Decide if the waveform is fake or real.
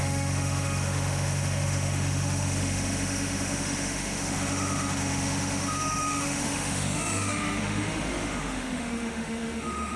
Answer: fake